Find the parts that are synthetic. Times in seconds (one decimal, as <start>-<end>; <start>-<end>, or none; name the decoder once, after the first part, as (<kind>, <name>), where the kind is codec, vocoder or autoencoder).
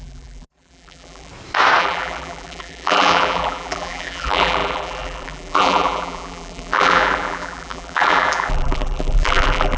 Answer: 0.0-1.3 (vocoder, BigVGAN v2); 1.8-9.8